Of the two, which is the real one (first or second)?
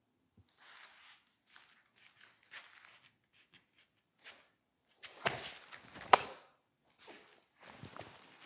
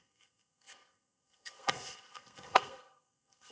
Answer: first